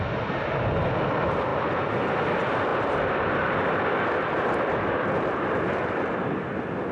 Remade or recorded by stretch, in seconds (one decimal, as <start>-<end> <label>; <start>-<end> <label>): 0.0-6.9 recorded